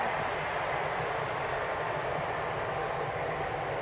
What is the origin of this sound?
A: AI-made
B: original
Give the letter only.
B